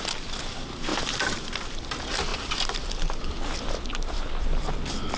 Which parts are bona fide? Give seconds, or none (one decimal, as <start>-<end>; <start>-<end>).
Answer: 0.0-5.2